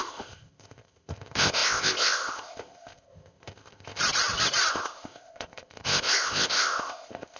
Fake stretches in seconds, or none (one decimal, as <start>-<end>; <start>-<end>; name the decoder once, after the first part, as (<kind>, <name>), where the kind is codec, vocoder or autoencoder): 0.0-4.0 (codec, ZipCodec); 4.7-7.4